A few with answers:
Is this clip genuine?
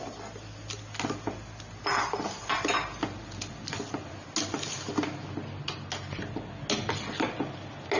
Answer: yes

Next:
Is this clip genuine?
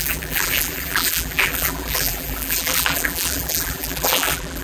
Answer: no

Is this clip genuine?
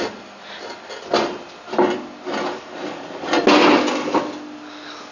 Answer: yes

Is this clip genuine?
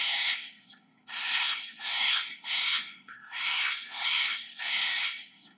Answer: no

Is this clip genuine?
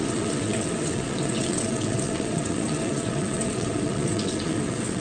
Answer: no